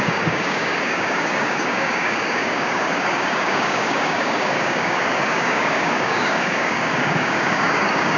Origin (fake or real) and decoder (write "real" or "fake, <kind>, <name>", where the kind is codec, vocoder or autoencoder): fake, codec, DAC